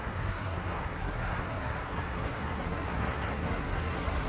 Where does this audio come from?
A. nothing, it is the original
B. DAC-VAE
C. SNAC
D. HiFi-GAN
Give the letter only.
C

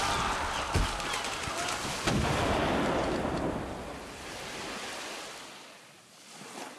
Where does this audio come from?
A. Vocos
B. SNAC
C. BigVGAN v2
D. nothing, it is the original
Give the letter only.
D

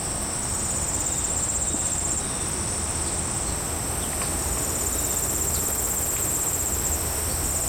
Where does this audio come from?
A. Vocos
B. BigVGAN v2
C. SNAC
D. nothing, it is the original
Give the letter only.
D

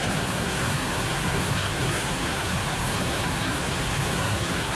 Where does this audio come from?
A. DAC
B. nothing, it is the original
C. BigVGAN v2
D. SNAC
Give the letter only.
D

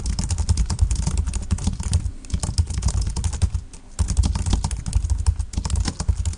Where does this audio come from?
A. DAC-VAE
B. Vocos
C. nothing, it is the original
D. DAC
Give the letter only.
C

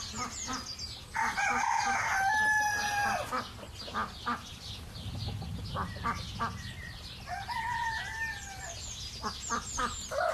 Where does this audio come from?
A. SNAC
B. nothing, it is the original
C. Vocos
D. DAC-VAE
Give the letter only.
B